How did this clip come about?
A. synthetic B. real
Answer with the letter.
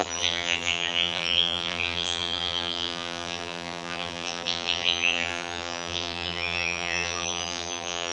A